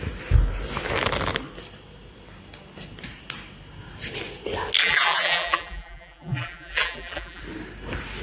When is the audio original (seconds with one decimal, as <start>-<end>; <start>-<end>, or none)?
0.0-4.8; 7.4-8.2

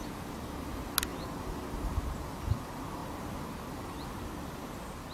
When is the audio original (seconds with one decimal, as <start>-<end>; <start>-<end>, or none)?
0.0-5.1

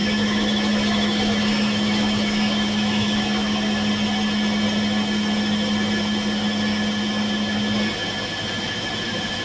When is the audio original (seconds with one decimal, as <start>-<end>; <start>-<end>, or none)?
3.9-9.4

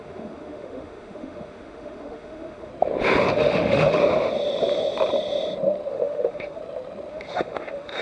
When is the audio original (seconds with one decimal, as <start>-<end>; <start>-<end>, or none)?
2.7-3.3; 4.0-5.9; 6.6-7.1

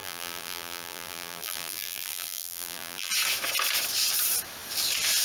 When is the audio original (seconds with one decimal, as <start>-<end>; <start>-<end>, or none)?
3.1-5.2

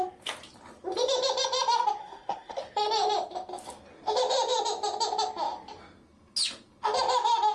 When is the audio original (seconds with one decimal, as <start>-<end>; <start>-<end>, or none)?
0.0-2.0; 2.6-7.5

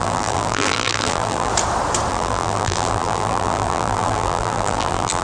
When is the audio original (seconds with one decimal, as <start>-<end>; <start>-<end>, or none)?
1.5-2.1